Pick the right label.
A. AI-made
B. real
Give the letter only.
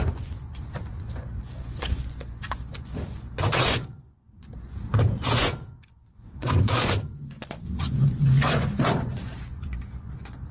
A